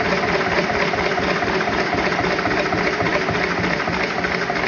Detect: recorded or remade recorded